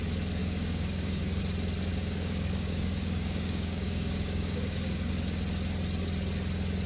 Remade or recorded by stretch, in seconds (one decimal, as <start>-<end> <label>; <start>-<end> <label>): 0.0-0.4 recorded; 0.4-1.4 remade; 1.4-1.9 recorded; 1.9-5.1 remade; 5.1-6.9 recorded